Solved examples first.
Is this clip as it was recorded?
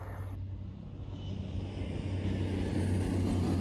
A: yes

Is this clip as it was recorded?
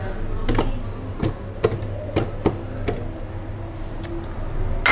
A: yes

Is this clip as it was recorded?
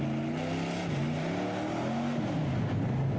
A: yes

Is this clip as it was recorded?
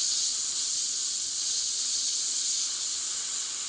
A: no